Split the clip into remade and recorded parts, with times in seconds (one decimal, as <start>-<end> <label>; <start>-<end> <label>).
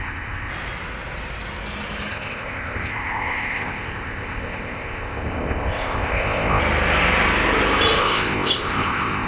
0.0-0.5 remade; 0.5-2.1 recorded; 2.1-6.6 remade; 6.6-8.0 recorded; 8.0-9.3 remade